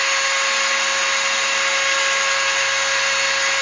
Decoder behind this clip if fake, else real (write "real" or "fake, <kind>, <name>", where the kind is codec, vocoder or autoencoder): real